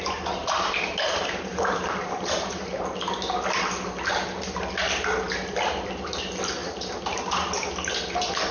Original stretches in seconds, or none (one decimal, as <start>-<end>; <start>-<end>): 0.0-0.4; 2.8-6.6; 7.2-8.5